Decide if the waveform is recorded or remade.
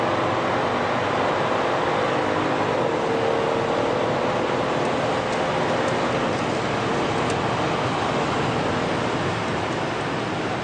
recorded